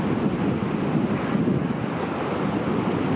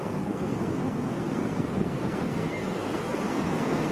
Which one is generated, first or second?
second